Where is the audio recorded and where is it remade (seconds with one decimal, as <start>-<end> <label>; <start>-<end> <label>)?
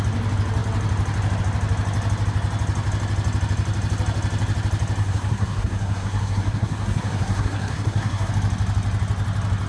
0.0-5.0 recorded; 5.0-8.3 remade; 8.3-9.7 recorded